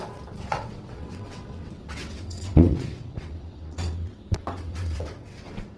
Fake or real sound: fake